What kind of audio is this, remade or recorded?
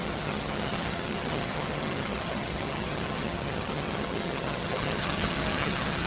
remade